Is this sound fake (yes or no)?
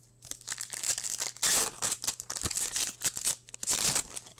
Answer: no